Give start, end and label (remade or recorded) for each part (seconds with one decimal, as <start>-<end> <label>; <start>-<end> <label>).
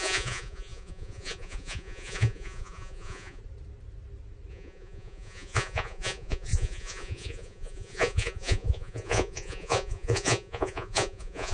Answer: 0.0-3.4 remade; 3.4-4.5 recorded; 4.5-11.5 remade